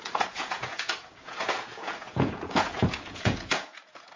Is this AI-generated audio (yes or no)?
yes